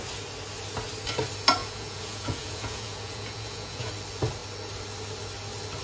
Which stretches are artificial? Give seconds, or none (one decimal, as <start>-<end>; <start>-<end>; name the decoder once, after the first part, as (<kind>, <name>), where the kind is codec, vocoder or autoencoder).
1.6-3.9 (vocoder, Vocos)